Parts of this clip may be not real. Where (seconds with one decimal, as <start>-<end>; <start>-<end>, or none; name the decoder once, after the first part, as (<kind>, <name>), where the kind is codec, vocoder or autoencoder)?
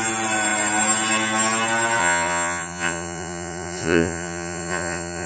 2.0-5.3 (vocoder, Vocos)